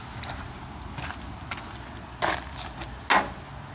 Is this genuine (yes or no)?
yes